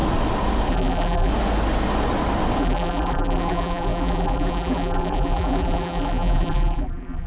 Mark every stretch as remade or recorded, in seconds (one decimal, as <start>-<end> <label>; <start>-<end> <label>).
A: 0.0-0.7 recorded; 0.7-1.3 remade; 1.3-2.6 recorded; 2.6-7.3 remade